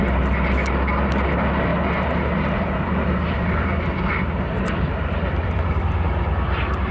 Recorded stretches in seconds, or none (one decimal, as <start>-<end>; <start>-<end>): 0.0-1.7; 5.8-6.9